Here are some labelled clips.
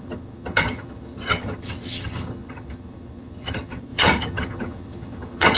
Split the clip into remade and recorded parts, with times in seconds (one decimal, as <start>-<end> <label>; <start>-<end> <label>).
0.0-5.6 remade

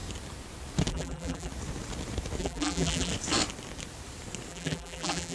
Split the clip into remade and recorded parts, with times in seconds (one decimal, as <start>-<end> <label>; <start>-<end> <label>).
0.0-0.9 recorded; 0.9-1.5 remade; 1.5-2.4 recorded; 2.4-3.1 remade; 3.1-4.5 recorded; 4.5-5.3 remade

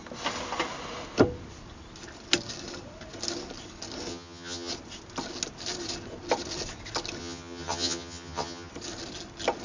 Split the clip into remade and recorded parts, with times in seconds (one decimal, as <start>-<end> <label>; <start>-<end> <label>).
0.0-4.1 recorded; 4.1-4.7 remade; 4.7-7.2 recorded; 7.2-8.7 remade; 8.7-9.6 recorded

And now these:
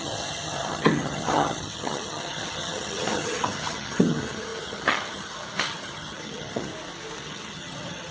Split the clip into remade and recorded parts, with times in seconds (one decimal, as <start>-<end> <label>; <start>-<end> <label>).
0.0-6.7 remade; 6.7-7.2 recorded; 7.2-8.1 remade

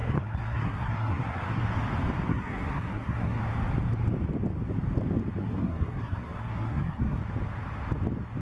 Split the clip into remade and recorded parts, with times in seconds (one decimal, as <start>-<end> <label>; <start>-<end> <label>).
0.0-1.6 remade; 1.6-2.3 recorded; 2.3-3.4 remade; 3.4-5.4 recorded; 5.4-7.2 remade; 7.2-8.4 recorded

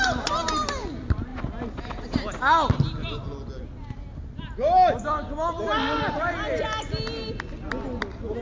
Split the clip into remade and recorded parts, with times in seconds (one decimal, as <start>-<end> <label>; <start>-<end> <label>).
0.0-8.4 recorded

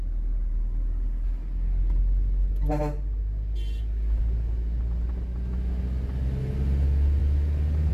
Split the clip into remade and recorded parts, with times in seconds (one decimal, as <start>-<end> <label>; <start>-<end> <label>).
0.0-7.9 recorded

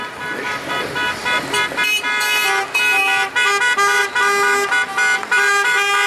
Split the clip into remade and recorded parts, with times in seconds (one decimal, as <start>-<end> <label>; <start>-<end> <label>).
0.0-6.1 recorded